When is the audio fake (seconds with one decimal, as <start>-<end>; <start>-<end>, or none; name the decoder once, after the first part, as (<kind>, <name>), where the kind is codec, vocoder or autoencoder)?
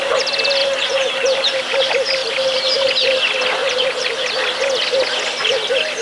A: 0.6-1.6 (vocoder, BigVGAN v2); 2.2-2.9; 3.6-4.3